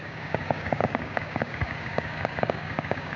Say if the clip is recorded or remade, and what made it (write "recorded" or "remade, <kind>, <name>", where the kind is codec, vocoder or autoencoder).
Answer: remade, codec, DAC